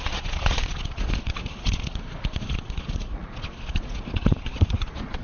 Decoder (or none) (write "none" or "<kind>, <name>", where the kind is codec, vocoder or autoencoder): vocoder, Vocos